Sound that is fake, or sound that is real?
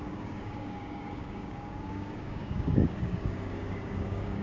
fake